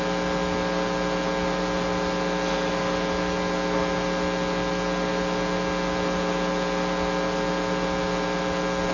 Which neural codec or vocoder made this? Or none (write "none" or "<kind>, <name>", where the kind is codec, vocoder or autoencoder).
none